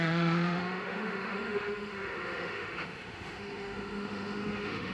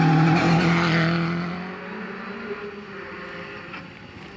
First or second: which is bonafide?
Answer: second